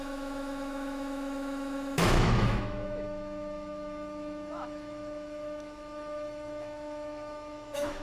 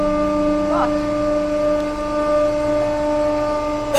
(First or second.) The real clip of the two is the second